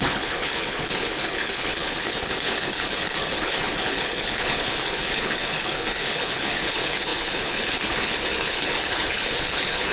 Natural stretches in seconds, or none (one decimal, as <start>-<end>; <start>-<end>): none